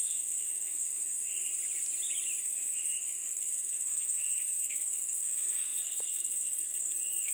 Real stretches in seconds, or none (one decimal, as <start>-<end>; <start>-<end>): 1.5-2.4